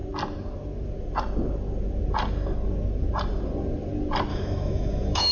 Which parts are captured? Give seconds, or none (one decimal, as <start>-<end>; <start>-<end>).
0.0-4.3

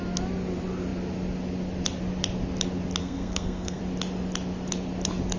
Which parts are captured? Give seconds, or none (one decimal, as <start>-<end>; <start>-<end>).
0.0-3.0; 3.8-5.4